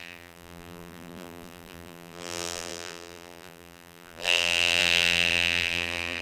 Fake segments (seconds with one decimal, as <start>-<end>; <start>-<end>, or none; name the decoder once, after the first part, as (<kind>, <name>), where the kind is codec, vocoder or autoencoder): 0.0-6.2 (vocoder, BigVGAN v2)